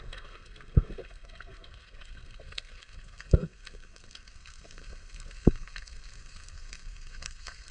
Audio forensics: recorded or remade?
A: remade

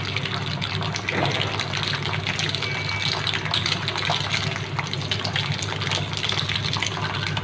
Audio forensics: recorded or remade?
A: recorded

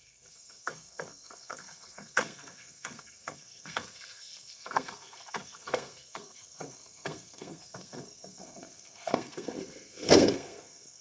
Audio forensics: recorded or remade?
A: remade